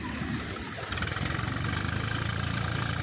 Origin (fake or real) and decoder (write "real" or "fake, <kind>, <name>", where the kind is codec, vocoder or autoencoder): real